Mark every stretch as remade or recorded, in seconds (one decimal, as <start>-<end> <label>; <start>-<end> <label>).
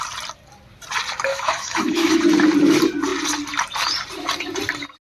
0.0-1.3 recorded; 1.3-2.2 remade; 2.2-5.0 recorded